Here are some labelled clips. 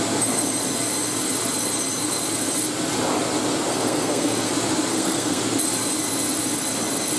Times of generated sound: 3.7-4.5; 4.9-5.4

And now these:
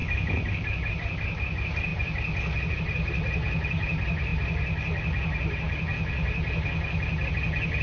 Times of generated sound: 0.0-0.9

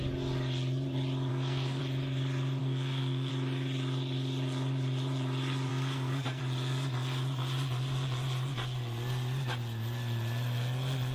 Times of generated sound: 1.3-1.8; 2.6-3.3; 5.7-6.4

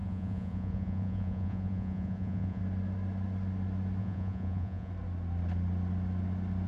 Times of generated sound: 0.0-2.6; 4.0-4.9

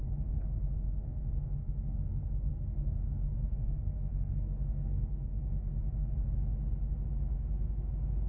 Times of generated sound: 0.0-5.7

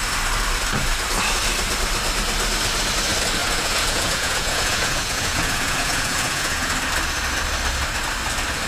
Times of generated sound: 3.4-6.7